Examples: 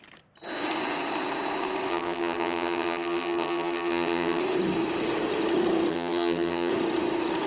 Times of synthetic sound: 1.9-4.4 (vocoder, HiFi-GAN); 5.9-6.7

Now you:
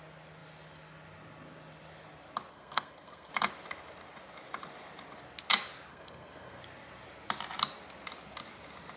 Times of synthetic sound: 2.5-3.3 (codec, SNAC); 5.9-6.6

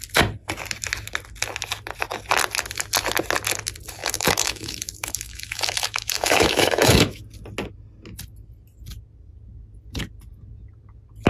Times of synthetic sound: 4.0-7.2 (autoencoder, DAC-VAE)

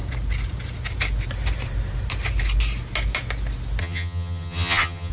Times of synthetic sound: 3.8-5.1 (vocoder, HiFi-GAN)

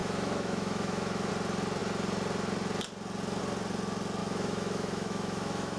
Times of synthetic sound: 0.0-1.3 (autoencoder, DAC-VAE); 4.2-5.8

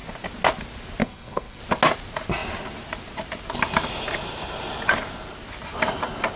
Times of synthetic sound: 1.0-1.6 (codec, SNAC)